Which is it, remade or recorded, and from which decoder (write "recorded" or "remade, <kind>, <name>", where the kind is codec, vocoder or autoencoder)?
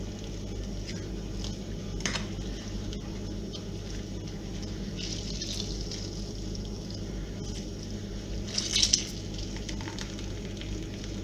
recorded